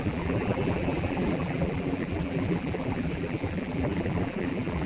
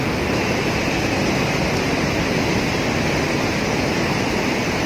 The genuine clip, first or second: second